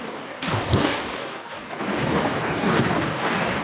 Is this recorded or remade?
remade